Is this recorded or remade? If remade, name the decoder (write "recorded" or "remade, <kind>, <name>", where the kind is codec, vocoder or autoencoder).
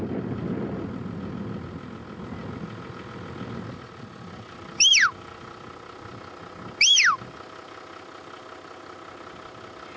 recorded